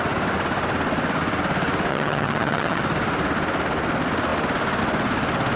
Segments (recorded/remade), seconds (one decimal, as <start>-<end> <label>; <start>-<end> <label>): 0.0-1.9 recorded; 1.9-2.8 remade; 2.8-5.6 recorded